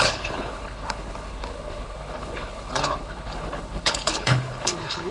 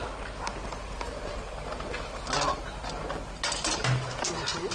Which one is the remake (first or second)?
first